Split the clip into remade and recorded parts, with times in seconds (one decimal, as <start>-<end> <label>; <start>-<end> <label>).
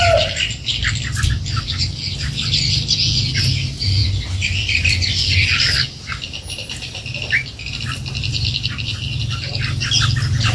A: 0.0-10.5 recorded